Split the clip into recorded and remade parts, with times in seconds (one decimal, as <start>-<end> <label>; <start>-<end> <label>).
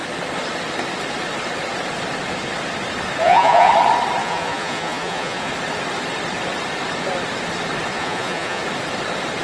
0.0-3.2 recorded; 3.2-3.7 remade; 3.7-4.2 recorded; 4.2-5.5 remade; 5.5-7.9 recorded; 7.9-8.6 remade; 8.6-9.4 recorded